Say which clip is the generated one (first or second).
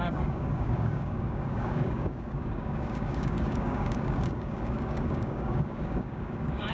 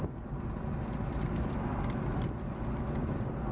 first